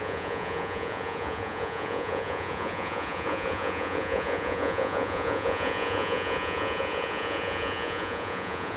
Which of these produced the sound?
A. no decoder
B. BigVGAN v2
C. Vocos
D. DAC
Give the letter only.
C